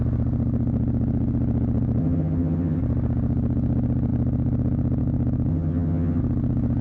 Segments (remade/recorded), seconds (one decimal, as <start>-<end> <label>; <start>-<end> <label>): 0.0-2.0 recorded; 2.0-2.8 remade; 2.8-5.5 recorded; 5.5-6.2 remade; 6.2-6.8 recorded